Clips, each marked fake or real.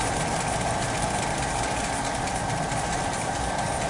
real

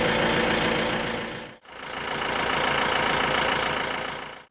real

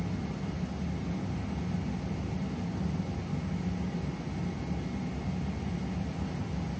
real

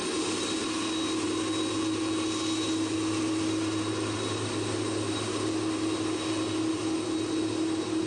real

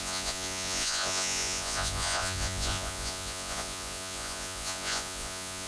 fake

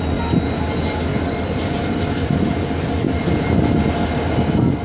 real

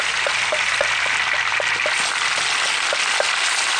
real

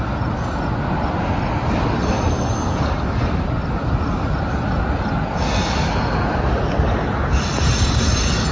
real